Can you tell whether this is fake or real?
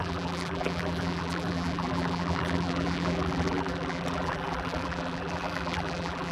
fake